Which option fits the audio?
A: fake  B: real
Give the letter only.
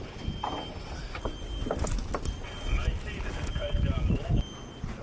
B